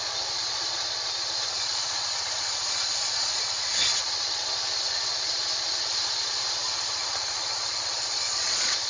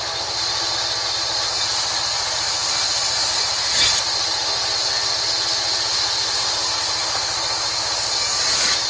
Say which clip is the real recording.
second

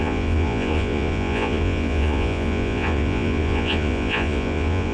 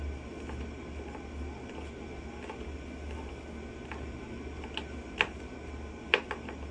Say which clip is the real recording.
second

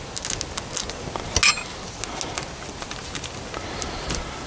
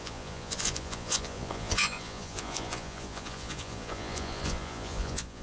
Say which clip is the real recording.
first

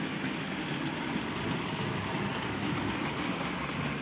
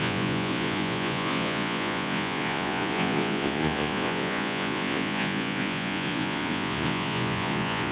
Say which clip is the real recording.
first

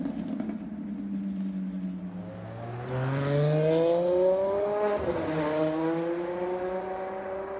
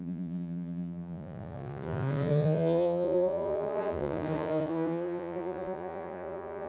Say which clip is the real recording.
first